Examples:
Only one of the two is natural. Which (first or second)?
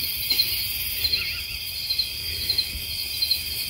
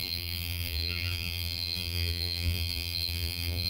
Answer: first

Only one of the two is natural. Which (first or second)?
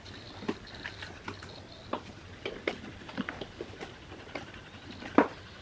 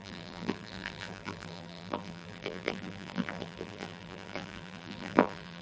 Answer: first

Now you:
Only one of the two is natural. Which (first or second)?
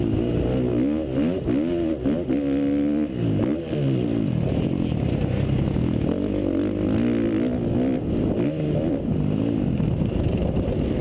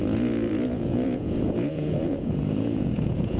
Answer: first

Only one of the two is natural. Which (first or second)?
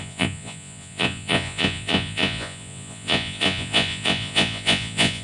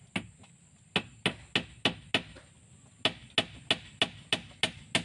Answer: second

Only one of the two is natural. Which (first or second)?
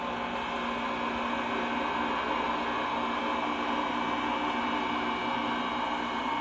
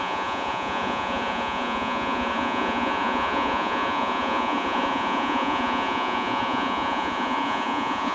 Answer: first